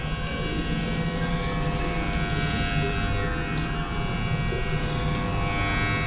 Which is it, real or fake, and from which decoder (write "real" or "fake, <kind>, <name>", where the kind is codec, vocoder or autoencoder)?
real